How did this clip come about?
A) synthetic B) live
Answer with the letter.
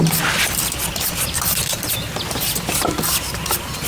B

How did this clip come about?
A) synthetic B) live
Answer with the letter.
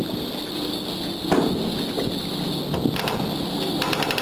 B